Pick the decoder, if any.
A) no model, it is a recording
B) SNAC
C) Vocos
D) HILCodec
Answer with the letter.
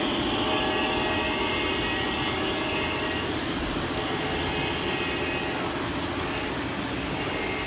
A